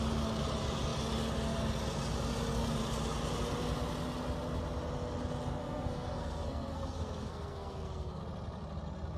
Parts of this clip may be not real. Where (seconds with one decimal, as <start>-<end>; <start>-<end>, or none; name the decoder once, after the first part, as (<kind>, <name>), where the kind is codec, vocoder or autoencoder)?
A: 5.6-8.2 (codec, SNAC)